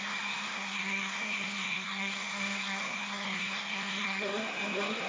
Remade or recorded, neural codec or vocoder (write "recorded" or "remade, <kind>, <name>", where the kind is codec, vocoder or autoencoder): remade, codec, SNAC